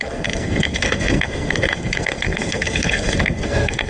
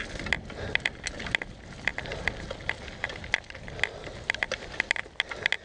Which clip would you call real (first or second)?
second